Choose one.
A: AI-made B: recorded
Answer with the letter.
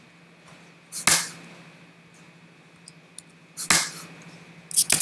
B